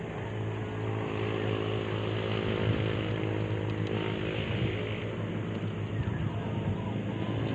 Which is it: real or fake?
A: real